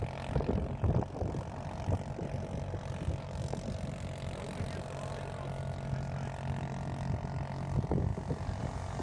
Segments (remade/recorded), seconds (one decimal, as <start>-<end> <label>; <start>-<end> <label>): 0.0-9.0 recorded

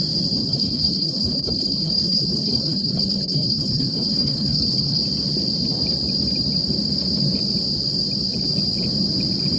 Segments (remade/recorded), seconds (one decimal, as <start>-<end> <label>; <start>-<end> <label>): 0.0-0.4 recorded; 0.4-5.0 remade; 5.0-9.6 recorded

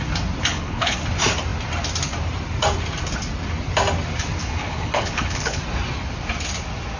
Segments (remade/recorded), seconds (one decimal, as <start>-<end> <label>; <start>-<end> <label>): 0.0-0.5 recorded; 0.5-1.0 remade; 1.0-4.4 recorded; 4.4-5.6 remade; 5.6-7.0 recorded

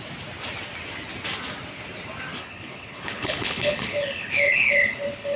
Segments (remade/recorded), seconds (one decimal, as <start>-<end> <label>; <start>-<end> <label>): 0.0-2.3 recorded; 2.3-5.4 remade

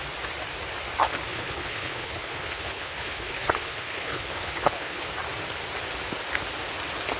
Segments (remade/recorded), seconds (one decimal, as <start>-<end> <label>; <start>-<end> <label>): 0.0-1.3 recorded; 1.3-5.0 remade; 5.0-7.2 recorded

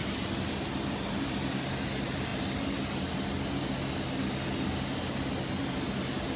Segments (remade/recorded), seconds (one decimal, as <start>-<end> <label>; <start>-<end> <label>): 0.0-6.4 recorded